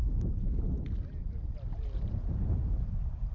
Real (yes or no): yes